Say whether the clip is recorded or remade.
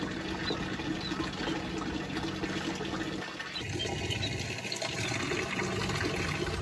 recorded